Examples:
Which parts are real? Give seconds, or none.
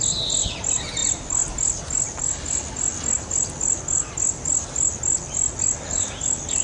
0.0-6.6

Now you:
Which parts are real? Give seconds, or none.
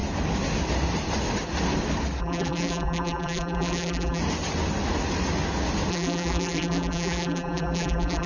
0.0-2.2; 4.2-5.9